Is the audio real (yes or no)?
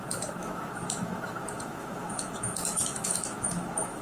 no